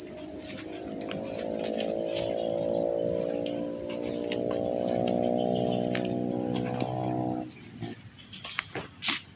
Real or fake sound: real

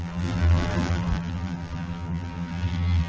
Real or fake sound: fake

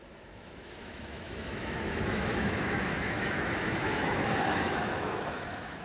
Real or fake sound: fake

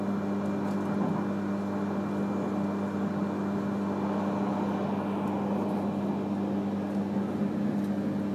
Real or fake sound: real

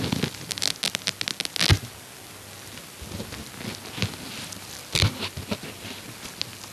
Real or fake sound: real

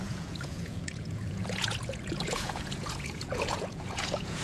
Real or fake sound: fake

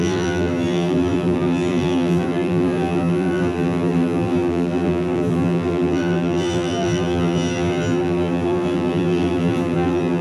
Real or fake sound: fake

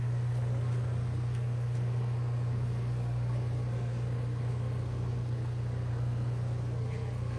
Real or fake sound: fake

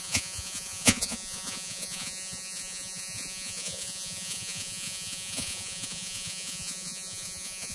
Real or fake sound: fake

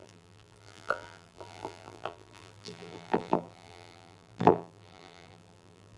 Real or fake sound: fake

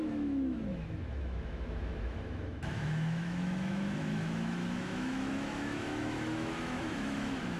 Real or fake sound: fake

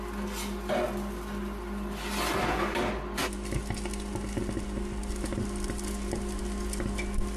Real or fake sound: real